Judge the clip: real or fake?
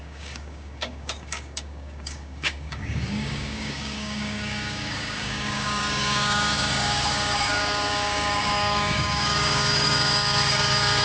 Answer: fake